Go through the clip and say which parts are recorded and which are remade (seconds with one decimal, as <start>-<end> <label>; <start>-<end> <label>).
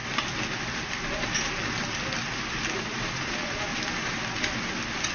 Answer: 0.0-3.1 recorded; 3.1-3.7 remade; 3.7-5.1 recorded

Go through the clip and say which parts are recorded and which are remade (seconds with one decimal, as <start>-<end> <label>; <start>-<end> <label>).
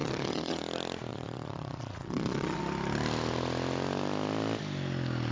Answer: 0.0-0.6 remade; 0.6-1.1 recorded; 1.1-2.6 remade; 2.6-5.3 recorded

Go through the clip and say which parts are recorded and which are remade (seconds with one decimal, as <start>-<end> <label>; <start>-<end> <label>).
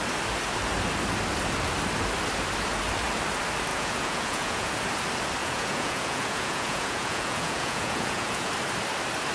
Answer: 0.0-3.7 recorded; 3.7-4.7 remade; 4.7-5.4 recorded; 5.4-8.5 remade; 8.5-9.3 recorded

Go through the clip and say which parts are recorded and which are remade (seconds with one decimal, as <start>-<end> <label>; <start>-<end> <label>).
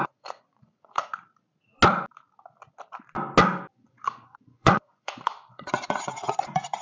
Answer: 0.0-1.1 remade; 1.1-3.7 recorded; 3.7-6.8 remade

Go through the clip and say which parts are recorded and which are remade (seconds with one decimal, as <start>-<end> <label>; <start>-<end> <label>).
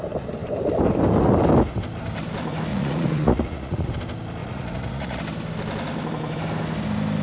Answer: 0.0-2.7 recorded; 2.7-3.9 remade; 3.9-4.4 recorded; 4.4-5.2 remade; 5.2-7.2 recorded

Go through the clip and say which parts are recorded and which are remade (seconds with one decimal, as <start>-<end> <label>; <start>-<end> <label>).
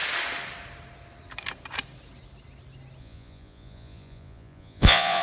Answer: 0.0-3.0 recorded; 3.0-5.2 remade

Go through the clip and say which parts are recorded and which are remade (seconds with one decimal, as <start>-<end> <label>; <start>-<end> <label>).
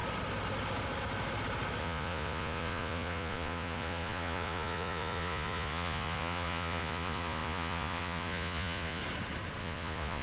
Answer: 0.0-1.8 recorded; 1.8-9.0 remade; 9.0-9.6 recorded; 9.6-10.2 remade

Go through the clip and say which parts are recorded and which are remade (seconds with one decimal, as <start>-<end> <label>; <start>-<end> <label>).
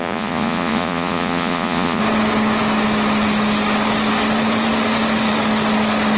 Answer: 0.0-2.0 remade; 2.0-6.2 recorded